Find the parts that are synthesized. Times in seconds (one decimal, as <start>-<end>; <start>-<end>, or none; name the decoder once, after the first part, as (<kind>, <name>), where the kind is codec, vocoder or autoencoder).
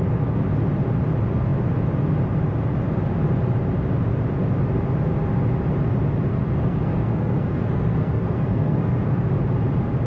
6.3-9.3 (codec, SNAC)